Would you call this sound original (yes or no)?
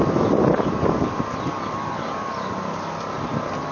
yes